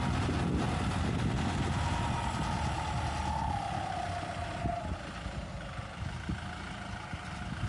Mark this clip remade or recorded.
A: recorded